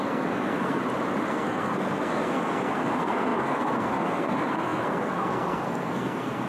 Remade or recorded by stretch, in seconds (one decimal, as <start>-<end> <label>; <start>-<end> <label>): 0.0-0.8 remade; 0.8-1.3 recorded; 1.3-6.5 remade